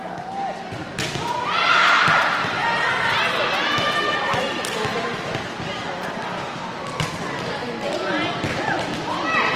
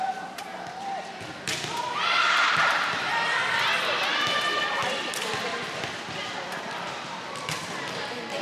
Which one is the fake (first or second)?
second